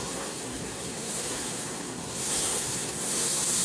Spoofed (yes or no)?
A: yes